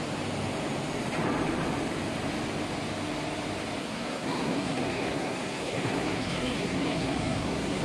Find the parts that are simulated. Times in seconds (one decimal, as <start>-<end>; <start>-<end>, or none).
3.8-7.8